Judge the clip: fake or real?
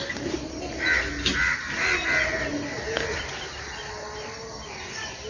real